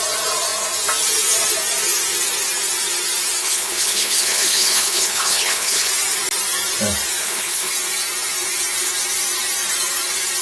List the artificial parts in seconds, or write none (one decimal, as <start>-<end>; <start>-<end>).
3.4-5.9; 7.2-7.7